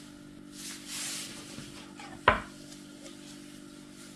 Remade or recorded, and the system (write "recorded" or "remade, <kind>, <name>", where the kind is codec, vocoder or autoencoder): recorded